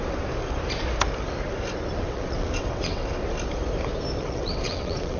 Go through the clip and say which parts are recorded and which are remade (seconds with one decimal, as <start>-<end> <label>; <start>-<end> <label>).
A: 0.0-2.0 recorded; 2.0-3.0 remade; 3.0-4.2 recorded; 4.2-5.2 remade